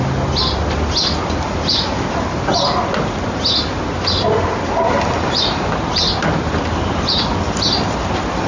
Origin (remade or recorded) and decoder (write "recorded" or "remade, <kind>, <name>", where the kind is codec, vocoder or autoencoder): recorded